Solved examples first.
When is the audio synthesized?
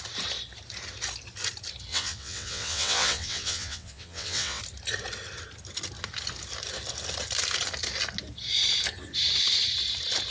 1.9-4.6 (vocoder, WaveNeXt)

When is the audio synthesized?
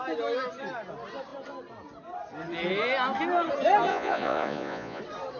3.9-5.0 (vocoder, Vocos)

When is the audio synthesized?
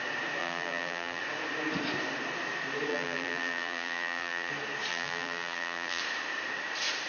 0.4-1.2 (vocoder, BigVGAN v2); 2.9-4.5; 4.9-6.0